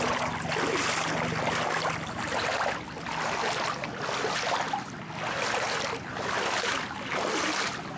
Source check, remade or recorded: recorded